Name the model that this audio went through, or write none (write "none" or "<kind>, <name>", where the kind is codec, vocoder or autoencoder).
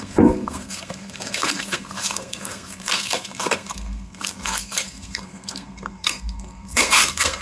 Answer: codec, SNAC